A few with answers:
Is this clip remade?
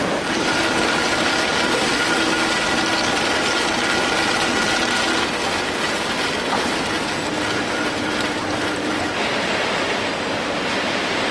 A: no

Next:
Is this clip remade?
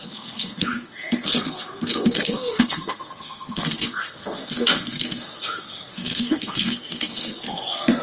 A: yes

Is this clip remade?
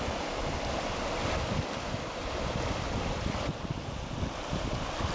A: no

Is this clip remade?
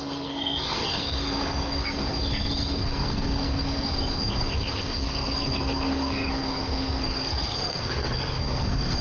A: yes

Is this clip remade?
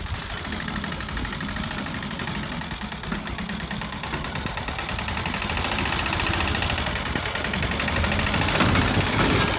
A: no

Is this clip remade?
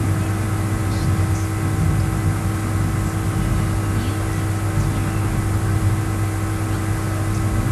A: no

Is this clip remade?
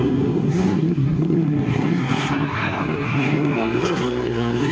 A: yes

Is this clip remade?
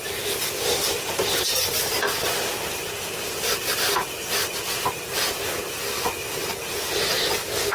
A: no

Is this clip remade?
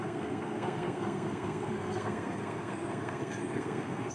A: yes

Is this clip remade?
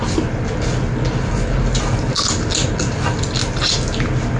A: no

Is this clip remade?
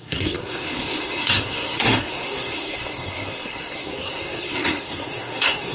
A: yes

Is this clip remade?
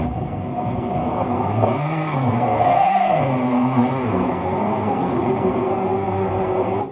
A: yes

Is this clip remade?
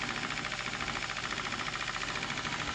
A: no